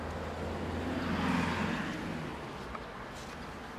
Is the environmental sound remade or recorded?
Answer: recorded